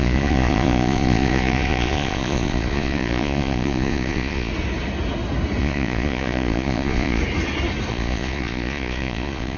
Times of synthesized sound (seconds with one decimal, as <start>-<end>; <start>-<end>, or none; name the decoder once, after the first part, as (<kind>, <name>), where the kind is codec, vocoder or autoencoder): 0.0-4.5 (vocoder, Vocos); 5.6-7.2; 7.9-9.6